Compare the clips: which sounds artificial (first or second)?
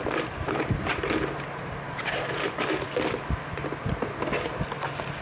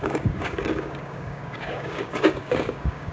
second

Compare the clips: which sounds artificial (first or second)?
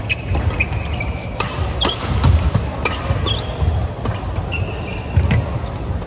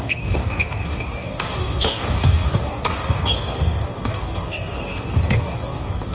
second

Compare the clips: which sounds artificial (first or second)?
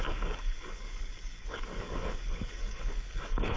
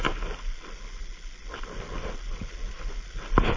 first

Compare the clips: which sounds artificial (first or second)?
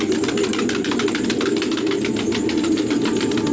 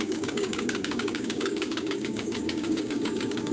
second